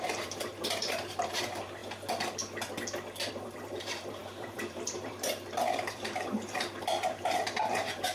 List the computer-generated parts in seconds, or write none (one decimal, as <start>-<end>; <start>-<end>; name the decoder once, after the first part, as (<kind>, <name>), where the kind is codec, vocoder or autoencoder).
0.0-1.8 (vocoder, BigVGAN v2); 3.3-8.1